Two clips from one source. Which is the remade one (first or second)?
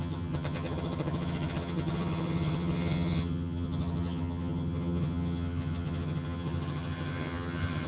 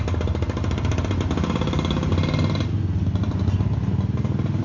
first